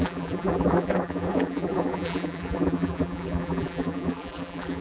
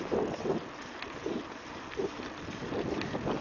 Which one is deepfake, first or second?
first